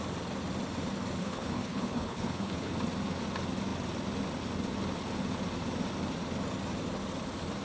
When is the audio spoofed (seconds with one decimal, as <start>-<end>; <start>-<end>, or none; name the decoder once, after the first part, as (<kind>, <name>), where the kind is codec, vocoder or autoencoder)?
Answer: 1.2-2.7 (codec, HILCodec)